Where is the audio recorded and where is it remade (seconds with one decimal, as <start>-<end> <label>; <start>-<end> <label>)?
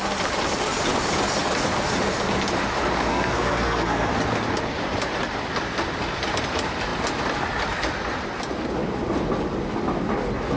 0.0-3.1 recorded; 3.1-4.1 remade; 4.1-10.6 recorded